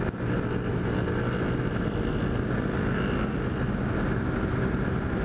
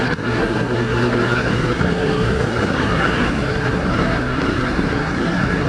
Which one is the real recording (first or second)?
first